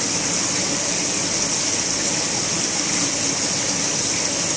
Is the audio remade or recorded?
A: recorded